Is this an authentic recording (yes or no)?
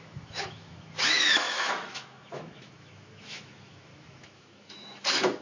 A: no